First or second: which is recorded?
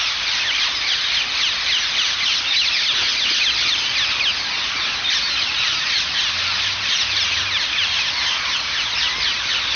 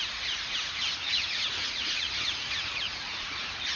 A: first